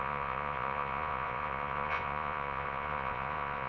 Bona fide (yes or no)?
no